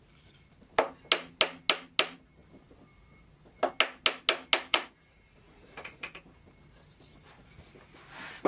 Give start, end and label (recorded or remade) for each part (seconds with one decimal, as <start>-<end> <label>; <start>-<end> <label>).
0.0-4.7 recorded; 4.7-6.2 remade; 6.2-8.5 recorded